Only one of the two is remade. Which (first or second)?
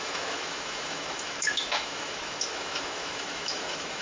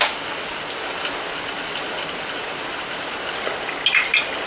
first